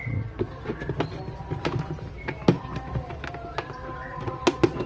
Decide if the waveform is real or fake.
real